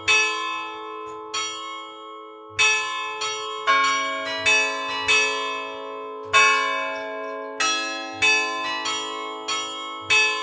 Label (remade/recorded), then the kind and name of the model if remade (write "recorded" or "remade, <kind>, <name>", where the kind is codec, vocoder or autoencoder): recorded